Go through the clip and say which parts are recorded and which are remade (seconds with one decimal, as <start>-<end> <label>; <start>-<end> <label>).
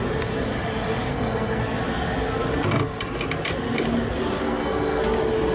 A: 0.0-1.1 recorded; 1.1-1.6 remade; 1.6-4.4 recorded; 4.4-5.0 remade; 5.0-5.5 recorded